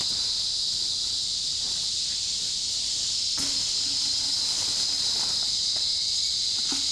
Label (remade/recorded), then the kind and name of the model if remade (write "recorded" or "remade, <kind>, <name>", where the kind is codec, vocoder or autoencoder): recorded